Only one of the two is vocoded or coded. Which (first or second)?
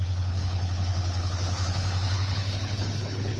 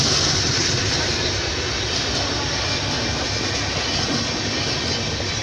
first